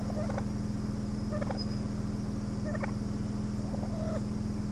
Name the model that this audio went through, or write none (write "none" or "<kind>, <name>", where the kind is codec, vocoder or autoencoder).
none